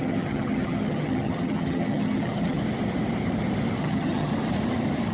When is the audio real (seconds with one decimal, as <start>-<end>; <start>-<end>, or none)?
2.6-3.8; 4.3-5.1